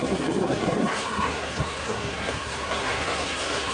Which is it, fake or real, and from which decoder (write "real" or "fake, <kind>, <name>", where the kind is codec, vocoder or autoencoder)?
fake, codec, SNAC